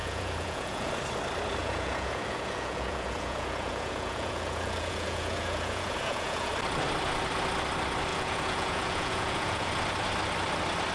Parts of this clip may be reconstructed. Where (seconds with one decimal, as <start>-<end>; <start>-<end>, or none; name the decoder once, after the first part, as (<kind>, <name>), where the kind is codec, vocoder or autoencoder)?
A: 0.0-0.9 (vocoder, Vocos); 1.6-6.5; 8.1-9.7